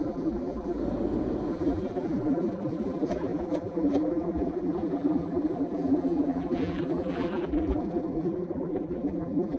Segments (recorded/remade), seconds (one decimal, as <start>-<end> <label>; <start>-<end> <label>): 0.0-0.8 remade; 0.8-1.5 recorded; 1.5-9.6 remade